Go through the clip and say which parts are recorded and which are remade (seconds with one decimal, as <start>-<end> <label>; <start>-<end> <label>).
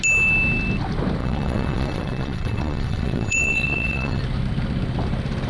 0.0-1.2 recorded; 1.2-4.2 remade; 4.2-5.5 recorded